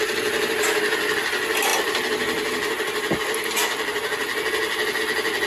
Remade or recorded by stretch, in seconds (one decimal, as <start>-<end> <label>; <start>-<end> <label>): 0.0-5.5 recorded

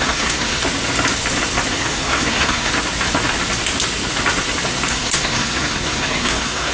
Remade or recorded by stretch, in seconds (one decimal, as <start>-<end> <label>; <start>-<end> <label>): 0.0-0.6 remade; 0.6-1.7 recorded; 1.7-2.7 remade; 2.7-4.9 recorded; 4.9-6.7 remade

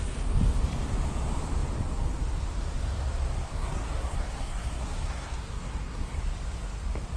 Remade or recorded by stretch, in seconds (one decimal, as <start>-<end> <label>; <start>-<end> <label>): 0.0-3.5 recorded; 3.5-6.2 remade; 6.2-7.2 recorded

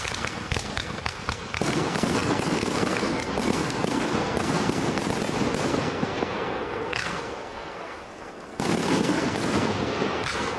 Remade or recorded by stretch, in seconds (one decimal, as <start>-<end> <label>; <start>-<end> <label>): 0.0-5.0 remade; 5.0-5.6 recorded; 5.6-10.6 remade

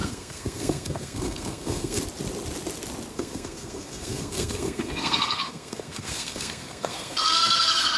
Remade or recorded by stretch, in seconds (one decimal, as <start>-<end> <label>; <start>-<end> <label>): 0.0-2.0 remade; 2.0-3.1 recorded; 3.1-8.0 remade